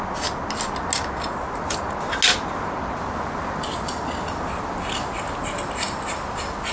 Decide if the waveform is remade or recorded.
recorded